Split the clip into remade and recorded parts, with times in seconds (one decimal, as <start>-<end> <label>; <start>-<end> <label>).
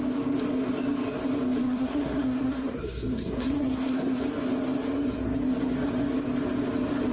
0.0-1.6 recorded; 1.6-4.2 remade; 4.2-7.1 recorded